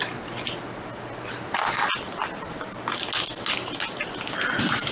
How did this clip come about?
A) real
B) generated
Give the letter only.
A